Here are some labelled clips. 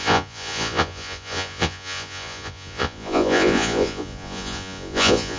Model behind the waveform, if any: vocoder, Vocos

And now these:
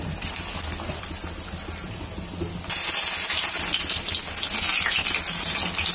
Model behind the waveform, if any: none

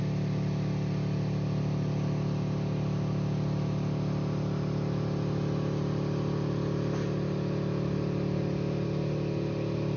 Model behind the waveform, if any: none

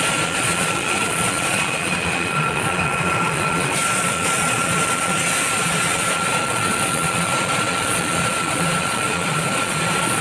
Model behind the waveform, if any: vocoder, Vocos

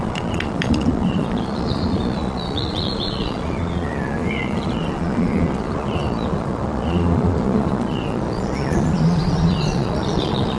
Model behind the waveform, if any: vocoder, Vocos